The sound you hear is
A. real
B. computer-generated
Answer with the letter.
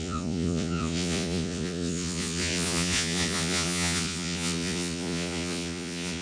B